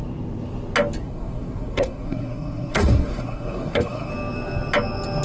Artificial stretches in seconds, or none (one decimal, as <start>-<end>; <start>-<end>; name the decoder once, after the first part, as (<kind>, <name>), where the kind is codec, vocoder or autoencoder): 1.0-4.1 (codec, SNAC)